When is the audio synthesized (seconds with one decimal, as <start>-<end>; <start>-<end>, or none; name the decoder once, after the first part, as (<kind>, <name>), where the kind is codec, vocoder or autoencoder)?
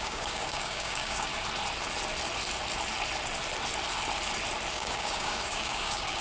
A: 0.0-1.3 (codec, DAC); 4.7-6.2